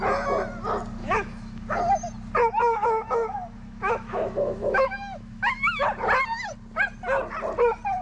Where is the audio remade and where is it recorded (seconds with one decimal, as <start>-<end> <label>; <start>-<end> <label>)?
0.0-1.0 recorded; 1.0-1.8 remade; 1.8-2.6 recorded; 2.6-5.8 remade; 5.8-8.0 recorded